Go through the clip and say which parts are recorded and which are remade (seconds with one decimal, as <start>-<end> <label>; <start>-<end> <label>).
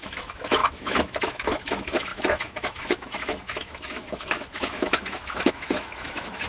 0.0-6.5 remade